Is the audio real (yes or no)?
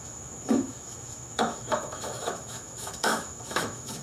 no